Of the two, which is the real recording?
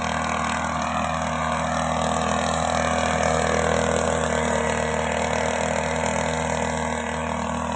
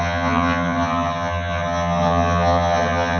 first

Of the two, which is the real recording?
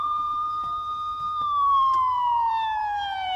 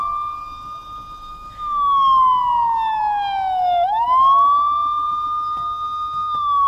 second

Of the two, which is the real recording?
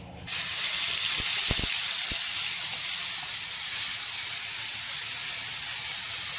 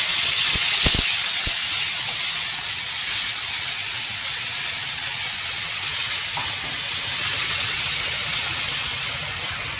first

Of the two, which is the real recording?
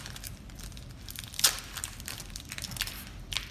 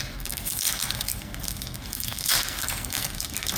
first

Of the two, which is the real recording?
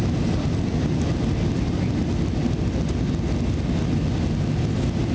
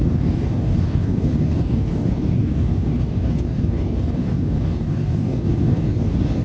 first